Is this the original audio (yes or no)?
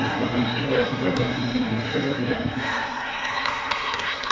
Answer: no